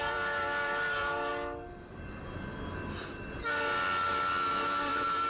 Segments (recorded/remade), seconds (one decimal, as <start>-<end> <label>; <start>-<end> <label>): 0.0-1.3 remade; 1.3-4.5 recorded; 4.5-5.3 remade